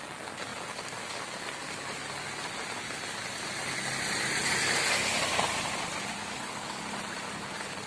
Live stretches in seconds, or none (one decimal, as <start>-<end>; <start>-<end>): 0.0-6.2; 6.8-7.9